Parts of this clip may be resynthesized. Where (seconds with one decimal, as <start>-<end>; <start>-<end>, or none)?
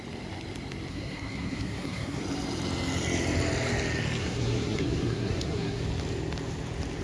0.9-2.2; 4.2-5.8